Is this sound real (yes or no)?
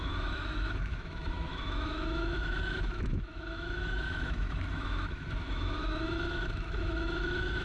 no